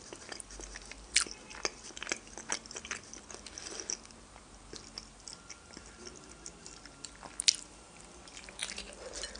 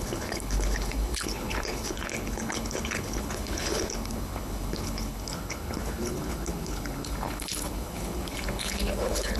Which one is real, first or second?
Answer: first